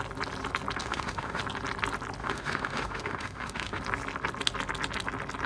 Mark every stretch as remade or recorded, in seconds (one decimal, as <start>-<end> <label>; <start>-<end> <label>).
0.0-0.8 recorded; 0.8-1.4 remade; 1.4-2.2 recorded; 2.2-3.8 remade; 3.8-5.5 recorded